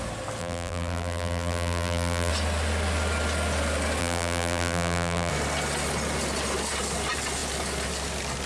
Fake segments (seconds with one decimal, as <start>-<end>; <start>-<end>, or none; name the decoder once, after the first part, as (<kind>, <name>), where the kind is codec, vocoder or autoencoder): 0.4-2.3 (vocoder, BigVGAN v2); 4.0-5.3